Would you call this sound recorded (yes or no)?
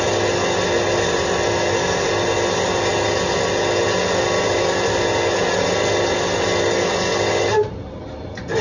yes